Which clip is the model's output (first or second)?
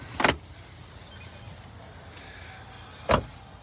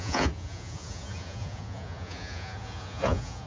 second